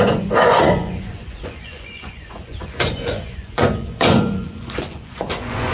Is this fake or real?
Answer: fake